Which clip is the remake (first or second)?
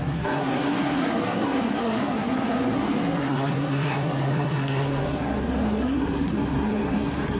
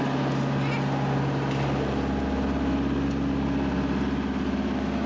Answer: first